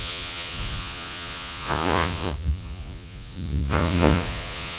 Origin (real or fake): fake